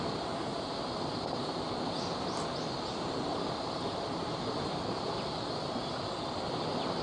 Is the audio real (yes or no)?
yes